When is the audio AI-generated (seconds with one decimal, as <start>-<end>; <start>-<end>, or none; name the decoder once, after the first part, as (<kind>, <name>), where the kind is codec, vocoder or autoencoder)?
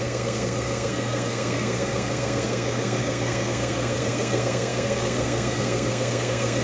0.0-6.6 (codec, SNAC)